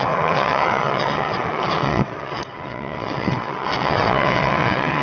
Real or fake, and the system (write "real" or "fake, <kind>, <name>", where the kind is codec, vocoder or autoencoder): fake, vocoder, WaveNeXt